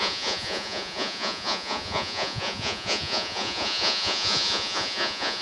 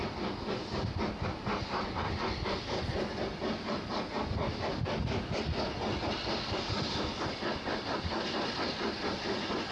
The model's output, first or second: first